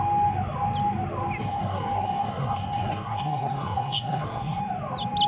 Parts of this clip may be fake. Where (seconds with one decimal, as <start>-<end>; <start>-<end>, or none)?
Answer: 1.4-4.6